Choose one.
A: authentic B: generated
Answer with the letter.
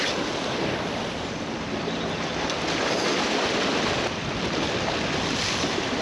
A